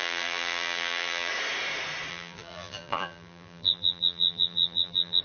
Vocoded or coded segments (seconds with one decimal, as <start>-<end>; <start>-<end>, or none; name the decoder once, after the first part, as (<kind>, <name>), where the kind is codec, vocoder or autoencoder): 0.0-1.3 (vocoder, BigVGAN v2); 2.1-5.2